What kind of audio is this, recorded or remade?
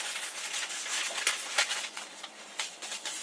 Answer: remade